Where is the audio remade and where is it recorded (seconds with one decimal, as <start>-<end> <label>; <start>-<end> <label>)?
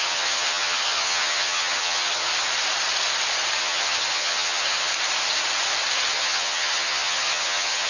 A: 0.0-2.3 remade; 2.3-3.6 recorded; 3.6-4.9 remade; 4.9-6.1 recorded; 6.1-7.9 remade